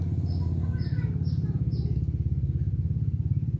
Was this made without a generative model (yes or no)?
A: yes